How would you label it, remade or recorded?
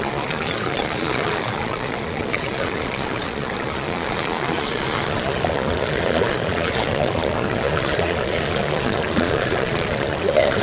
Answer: remade